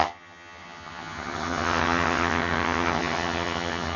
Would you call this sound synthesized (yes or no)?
yes